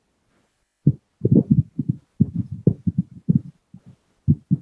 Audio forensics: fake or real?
real